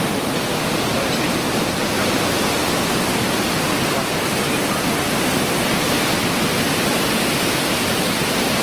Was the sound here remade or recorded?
recorded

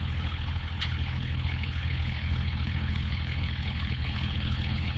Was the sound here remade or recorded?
remade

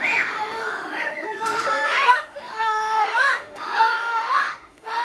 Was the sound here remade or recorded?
remade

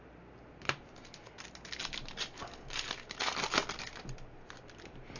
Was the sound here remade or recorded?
recorded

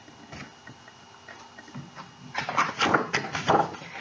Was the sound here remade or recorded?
recorded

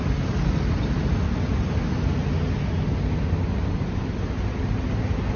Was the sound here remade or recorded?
recorded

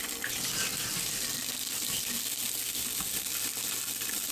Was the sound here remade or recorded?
recorded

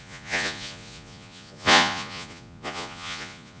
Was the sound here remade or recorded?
remade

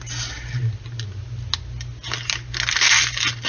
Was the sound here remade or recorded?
recorded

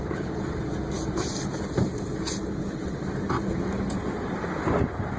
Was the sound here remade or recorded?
recorded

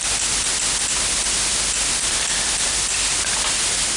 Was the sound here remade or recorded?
recorded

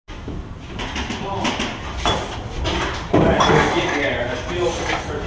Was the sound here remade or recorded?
recorded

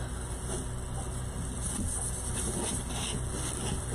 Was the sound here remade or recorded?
recorded